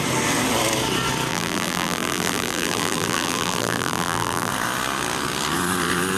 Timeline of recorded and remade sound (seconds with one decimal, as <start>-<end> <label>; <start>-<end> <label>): 0.0-1.3 recorded; 1.3-4.5 remade; 4.5-6.2 recorded

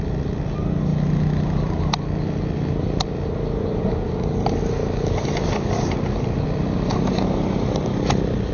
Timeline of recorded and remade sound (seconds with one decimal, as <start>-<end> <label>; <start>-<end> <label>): 0.0-0.9 recorded; 0.9-3.1 remade; 3.1-4.8 recorded; 4.8-6.8 remade; 6.8-8.5 recorded

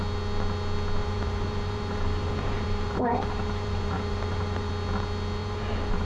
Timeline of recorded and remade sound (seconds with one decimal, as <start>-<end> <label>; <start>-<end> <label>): 0.0-1.0 recorded; 1.0-4.7 remade; 4.7-5.4 recorded; 5.4-6.1 remade